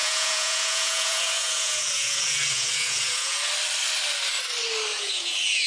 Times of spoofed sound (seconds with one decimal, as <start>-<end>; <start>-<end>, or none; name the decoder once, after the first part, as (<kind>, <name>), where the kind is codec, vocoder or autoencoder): 0.0-3.4 (vocoder, Vocos); 4.9-5.7

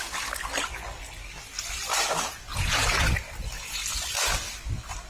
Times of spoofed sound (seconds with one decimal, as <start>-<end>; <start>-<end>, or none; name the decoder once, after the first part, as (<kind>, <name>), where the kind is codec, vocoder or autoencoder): 2.5-3.1 (vocoder, Vocos)

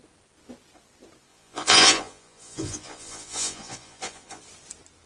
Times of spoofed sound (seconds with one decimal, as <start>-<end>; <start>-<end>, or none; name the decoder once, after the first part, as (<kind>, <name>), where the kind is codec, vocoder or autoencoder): 1.3-4.4 (vocoder, Vocos)

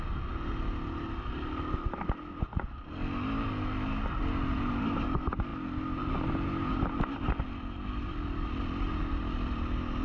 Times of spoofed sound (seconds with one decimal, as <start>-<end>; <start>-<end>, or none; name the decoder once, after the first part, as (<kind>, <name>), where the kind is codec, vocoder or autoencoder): none

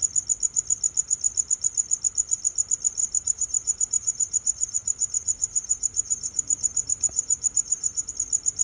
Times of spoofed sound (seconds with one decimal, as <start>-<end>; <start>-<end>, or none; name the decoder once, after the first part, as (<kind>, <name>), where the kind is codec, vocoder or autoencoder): 3.0-8.1 (vocoder, Vocos)